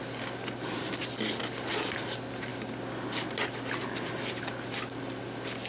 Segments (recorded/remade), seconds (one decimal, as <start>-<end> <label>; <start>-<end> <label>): 0.0-5.7 recorded